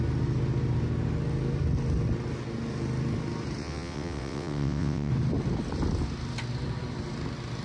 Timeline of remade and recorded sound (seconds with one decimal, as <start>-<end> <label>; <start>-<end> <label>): 0.0-3.6 recorded; 3.6-5.1 remade; 5.1-7.6 recorded